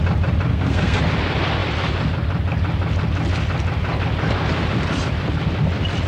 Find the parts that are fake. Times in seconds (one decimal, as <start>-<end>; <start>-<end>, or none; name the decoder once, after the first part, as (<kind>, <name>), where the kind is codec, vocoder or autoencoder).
0.5-1.0 (codec, SNAC)